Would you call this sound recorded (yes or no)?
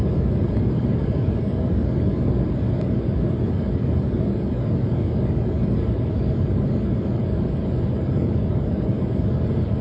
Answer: no